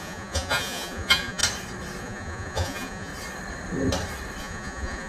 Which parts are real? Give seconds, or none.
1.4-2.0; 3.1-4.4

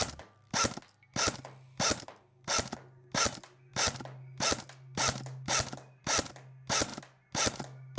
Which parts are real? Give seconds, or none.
0.0-8.0

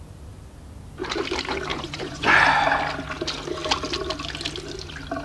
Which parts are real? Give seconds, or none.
0.0-1.7; 2.4-5.2

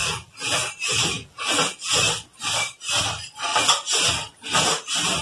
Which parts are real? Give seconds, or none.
2.0-3.5; 4.1-5.2

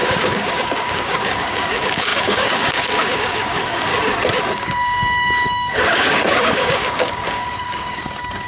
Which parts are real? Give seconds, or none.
3.9-4.5

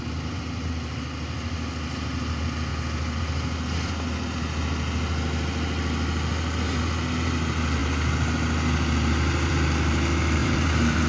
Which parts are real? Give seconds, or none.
0.0-10.4

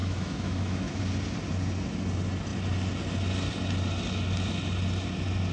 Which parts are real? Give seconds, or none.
1.0-5.5